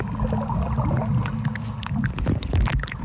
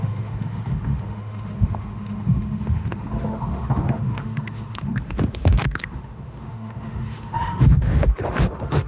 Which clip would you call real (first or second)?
first